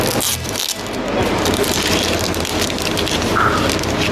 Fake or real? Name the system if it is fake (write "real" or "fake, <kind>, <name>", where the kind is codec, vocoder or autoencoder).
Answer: real